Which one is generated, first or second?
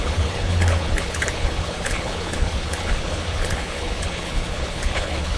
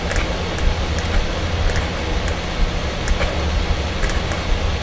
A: first